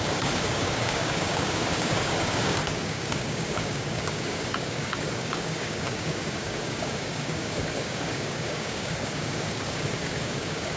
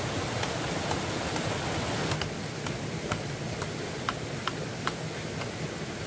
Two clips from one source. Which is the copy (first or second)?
first